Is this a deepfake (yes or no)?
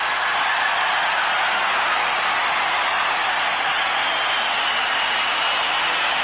no